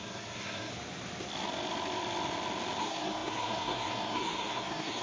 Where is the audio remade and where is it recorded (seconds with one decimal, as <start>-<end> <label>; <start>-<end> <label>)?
0.0-0.7 remade; 0.7-2.8 recorded; 2.8-5.0 remade